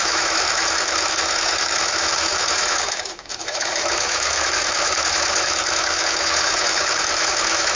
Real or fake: fake